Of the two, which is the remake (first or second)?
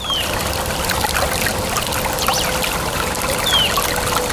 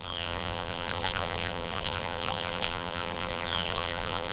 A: second